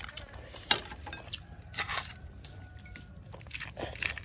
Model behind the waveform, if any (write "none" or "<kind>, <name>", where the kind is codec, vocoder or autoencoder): none